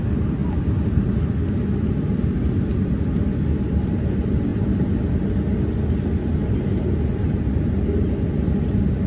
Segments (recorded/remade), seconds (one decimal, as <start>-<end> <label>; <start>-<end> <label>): 0.0-9.1 recorded